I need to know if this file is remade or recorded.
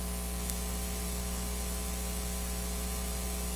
recorded